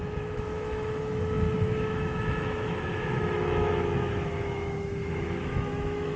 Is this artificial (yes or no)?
yes